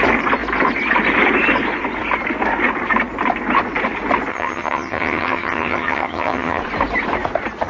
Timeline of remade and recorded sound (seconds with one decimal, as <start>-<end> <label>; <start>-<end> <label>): 0.0-4.3 recorded; 4.3-6.6 remade; 6.6-7.7 recorded